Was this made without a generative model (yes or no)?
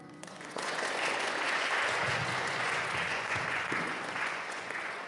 no